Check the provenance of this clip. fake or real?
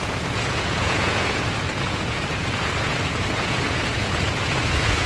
fake